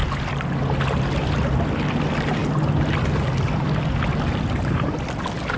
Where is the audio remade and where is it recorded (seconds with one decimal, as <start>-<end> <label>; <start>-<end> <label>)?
0.0-5.6 recorded